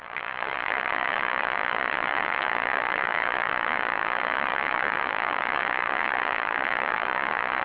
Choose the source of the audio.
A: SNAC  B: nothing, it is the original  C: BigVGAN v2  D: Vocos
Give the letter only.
D